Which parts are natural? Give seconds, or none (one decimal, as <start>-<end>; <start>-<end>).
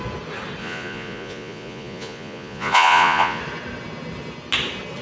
0.0-0.6; 3.4-5.0